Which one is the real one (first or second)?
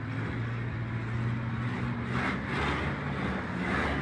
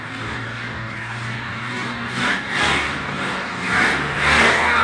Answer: first